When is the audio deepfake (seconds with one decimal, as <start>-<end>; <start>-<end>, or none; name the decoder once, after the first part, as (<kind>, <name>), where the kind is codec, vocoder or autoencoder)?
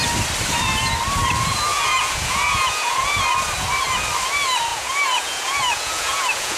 1.7-3.2 (vocoder, Vocos); 4.7-6.6